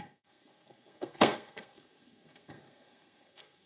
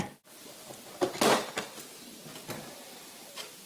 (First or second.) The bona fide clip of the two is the second